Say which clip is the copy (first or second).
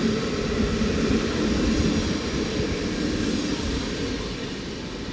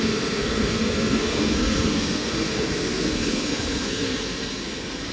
second